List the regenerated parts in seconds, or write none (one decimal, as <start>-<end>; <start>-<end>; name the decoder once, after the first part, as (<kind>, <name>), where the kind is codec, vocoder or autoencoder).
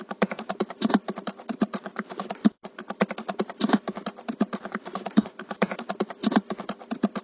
0.0-2.4 (vocoder, BigVGAN v2); 4.7-6.2